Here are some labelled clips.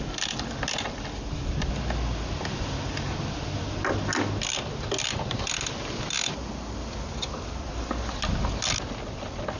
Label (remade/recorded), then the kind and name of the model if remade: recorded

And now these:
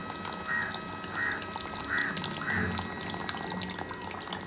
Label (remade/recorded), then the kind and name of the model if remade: recorded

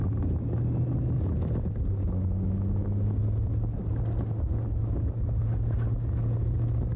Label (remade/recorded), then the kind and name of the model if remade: recorded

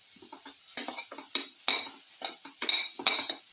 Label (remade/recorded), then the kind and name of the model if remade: recorded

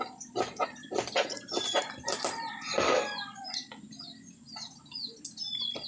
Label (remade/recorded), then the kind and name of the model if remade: recorded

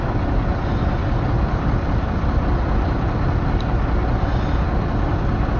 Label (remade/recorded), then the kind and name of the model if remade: recorded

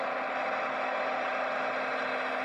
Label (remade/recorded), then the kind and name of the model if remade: recorded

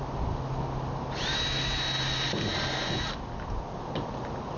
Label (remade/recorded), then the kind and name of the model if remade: recorded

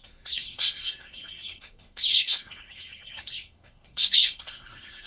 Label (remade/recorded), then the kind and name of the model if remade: remade, codec, SNAC